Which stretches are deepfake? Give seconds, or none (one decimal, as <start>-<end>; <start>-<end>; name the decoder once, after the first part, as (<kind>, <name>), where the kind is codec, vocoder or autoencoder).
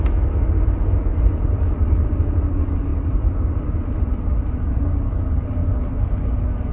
1.1-2.3 (vocoder, BigVGAN v2)